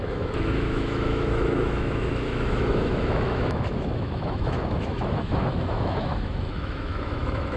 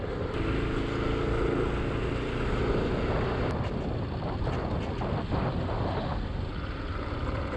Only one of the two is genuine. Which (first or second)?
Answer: second